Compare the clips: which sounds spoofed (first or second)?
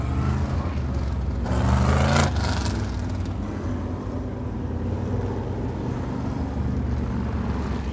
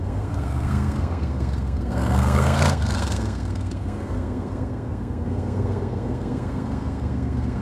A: second